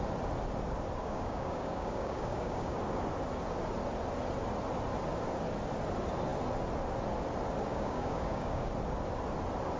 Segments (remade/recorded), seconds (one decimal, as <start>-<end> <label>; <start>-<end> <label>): 0.0-1.0 recorded; 1.0-2.8 remade; 2.8-7.7 recorded; 7.7-8.7 remade; 8.7-9.8 recorded